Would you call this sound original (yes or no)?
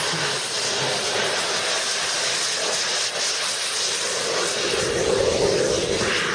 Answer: yes